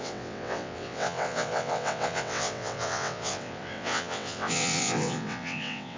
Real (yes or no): no